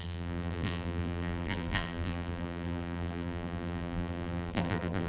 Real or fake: fake